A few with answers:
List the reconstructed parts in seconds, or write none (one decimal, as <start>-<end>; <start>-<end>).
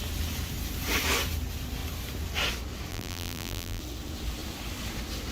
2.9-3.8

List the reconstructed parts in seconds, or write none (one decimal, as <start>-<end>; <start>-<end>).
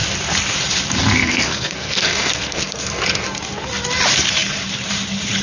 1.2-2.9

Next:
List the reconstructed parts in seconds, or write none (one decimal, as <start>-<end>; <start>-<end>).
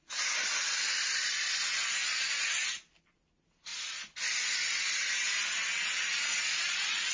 none